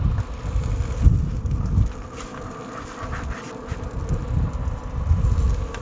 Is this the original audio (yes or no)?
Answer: yes